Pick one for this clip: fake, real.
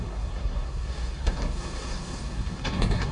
fake